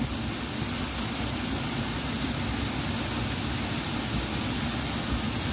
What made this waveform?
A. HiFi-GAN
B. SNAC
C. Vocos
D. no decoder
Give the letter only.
D